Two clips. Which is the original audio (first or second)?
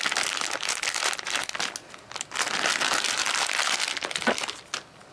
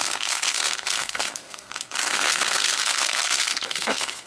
first